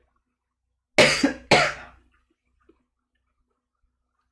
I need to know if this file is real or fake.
real